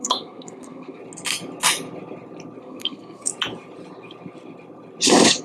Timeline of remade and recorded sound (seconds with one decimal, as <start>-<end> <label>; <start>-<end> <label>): 0.0-1.0 remade; 1.0-2.6 recorded; 2.6-3.3 remade; 3.3-5.4 recorded